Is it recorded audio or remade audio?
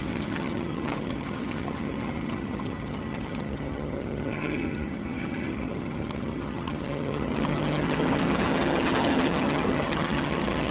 remade